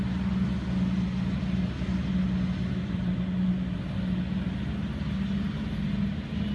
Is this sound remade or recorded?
recorded